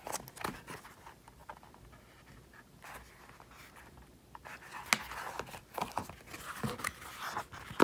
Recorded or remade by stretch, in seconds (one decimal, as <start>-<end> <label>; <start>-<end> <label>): 0.0-7.8 recorded